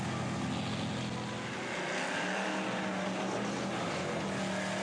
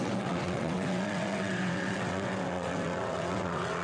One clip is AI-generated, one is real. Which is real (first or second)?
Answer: first